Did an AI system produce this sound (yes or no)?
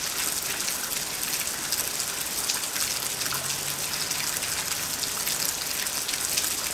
no